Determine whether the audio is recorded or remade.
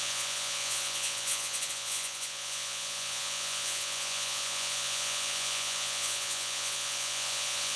remade